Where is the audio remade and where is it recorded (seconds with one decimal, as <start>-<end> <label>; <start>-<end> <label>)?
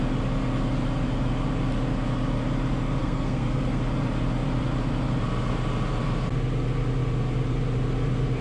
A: 0.0-3.0 recorded; 3.0-3.8 remade; 3.8-8.4 recorded